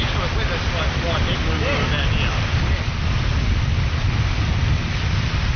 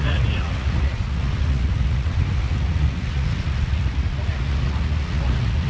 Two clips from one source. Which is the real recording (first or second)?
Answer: first